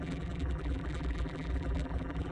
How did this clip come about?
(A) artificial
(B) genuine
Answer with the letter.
A